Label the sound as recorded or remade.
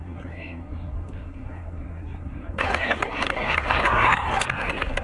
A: remade